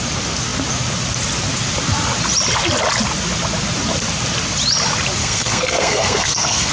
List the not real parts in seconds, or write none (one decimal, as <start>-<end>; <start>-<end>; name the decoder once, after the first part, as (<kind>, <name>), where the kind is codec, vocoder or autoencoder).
5.2-6.7 (codec, SNAC)